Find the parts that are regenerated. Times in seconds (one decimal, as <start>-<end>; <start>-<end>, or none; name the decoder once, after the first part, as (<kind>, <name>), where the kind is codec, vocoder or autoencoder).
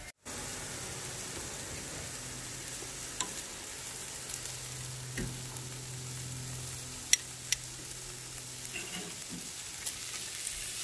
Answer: 0.5-3.5 (vocoder, BigVGAN v2)